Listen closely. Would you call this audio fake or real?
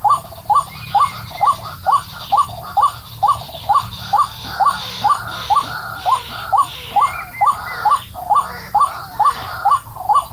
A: real